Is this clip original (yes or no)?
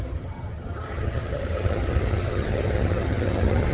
no